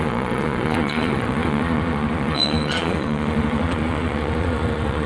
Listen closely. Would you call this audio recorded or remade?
remade